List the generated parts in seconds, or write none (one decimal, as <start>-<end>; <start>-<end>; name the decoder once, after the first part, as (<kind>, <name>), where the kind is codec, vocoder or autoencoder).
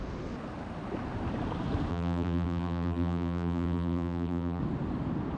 1.9-4.6 (vocoder, BigVGAN v2)